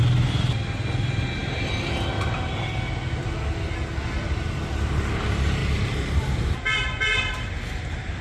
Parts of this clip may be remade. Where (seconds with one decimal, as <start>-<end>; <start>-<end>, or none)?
5.6-8.2